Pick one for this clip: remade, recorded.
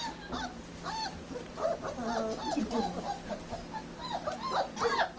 recorded